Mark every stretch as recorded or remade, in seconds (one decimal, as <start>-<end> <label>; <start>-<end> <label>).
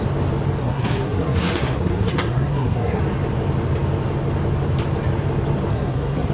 0.0-0.6 recorded; 0.6-3.0 remade; 3.0-5.7 recorded; 5.7-6.3 remade